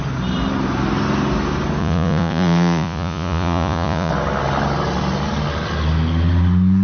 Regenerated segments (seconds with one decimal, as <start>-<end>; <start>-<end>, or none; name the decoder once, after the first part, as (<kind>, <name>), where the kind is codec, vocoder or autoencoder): 1.8-4.1 (vocoder, Vocos)